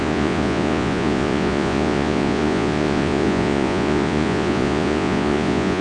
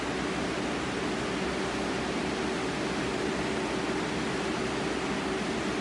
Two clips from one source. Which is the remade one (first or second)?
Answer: first